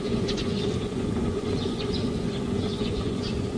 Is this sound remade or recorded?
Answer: remade